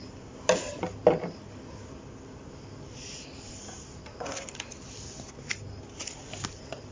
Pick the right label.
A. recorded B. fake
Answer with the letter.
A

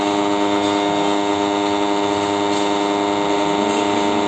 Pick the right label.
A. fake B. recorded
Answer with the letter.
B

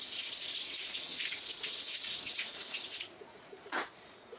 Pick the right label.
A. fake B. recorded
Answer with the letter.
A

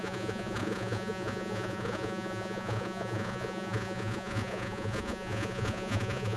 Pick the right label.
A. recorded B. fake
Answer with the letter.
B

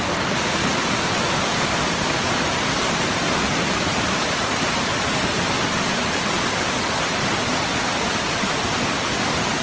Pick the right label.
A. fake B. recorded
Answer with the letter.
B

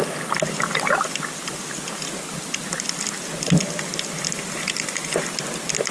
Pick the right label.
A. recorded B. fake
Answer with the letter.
A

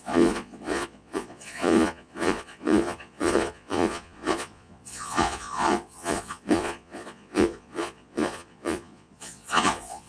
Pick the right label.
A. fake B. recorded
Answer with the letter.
A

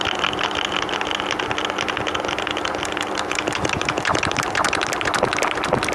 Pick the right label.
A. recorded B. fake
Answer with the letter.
A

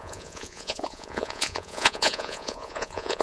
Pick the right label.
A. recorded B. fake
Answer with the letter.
B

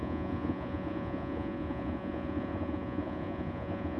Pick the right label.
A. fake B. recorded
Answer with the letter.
A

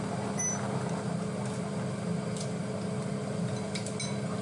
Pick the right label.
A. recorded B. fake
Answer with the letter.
A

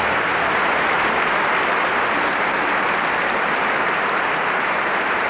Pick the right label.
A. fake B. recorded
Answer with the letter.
B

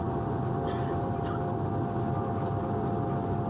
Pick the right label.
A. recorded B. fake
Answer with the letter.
A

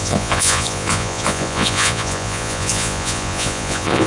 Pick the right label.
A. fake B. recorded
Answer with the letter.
A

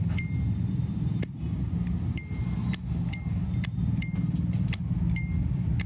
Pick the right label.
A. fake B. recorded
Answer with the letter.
B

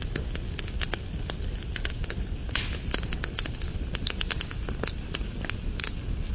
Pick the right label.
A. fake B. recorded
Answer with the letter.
B